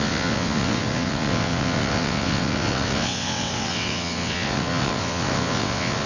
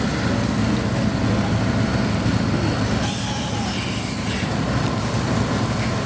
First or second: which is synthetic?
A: first